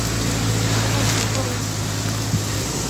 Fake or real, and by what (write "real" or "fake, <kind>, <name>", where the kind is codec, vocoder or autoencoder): real